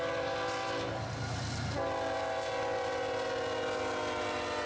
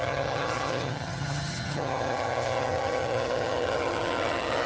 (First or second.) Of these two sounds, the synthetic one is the second